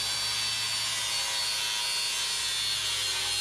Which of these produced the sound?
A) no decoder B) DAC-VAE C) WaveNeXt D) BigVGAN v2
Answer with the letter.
A